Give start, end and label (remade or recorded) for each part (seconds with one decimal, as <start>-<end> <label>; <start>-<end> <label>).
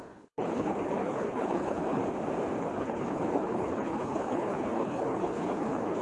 0.0-2.0 remade; 2.0-2.6 recorded; 2.6-6.0 remade